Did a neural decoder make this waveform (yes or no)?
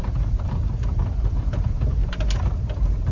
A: yes